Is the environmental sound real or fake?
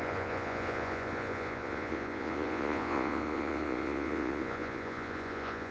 fake